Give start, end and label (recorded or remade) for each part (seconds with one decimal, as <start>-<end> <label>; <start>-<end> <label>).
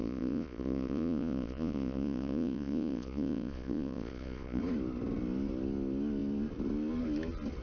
0.0-4.6 remade; 4.6-7.6 recorded